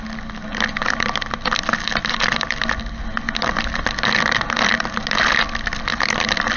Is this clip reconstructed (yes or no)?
no